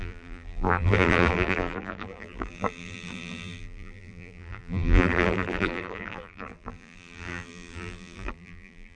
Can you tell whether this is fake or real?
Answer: fake